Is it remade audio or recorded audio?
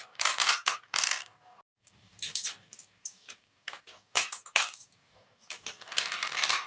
remade